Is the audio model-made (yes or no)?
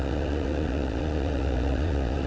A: yes